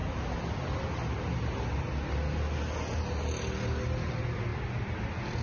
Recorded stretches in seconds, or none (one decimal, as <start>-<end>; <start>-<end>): 0.0-5.4